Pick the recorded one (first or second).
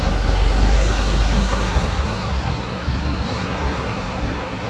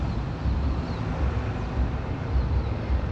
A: second